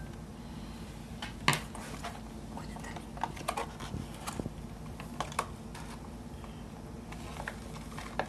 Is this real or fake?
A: real